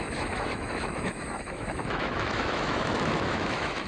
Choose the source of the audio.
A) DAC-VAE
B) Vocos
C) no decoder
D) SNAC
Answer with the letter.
A